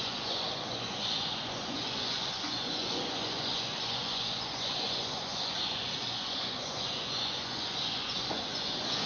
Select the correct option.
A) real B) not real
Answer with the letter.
B